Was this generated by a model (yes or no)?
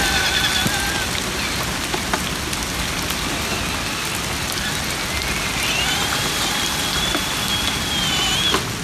no